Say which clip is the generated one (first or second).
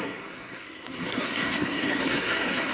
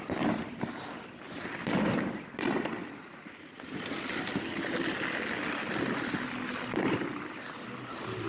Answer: first